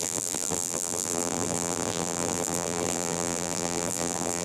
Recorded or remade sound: remade